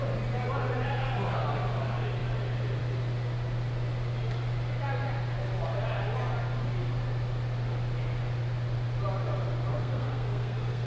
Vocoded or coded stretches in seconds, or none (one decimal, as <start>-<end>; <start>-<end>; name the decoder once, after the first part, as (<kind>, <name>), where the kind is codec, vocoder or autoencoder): 9.7-10.9 (codec, SNAC)